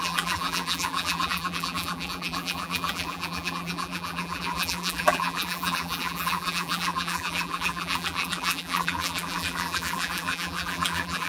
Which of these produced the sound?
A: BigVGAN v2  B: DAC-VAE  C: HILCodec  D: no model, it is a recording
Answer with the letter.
A